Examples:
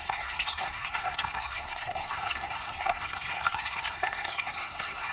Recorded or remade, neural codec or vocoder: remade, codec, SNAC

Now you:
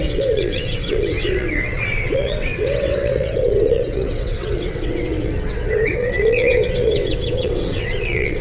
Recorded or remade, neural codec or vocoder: remade, vocoder, WaveNeXt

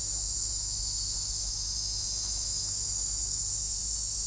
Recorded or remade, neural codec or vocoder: remade, autoencoder, DAC-VAE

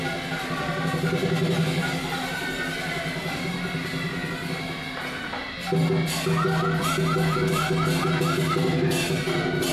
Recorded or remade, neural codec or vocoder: recorded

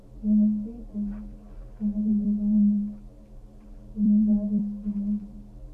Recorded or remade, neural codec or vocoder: remade, vocoder, BigVGAN v2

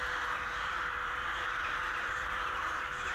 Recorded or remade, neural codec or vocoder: remade, vocoder, BigVGAN v2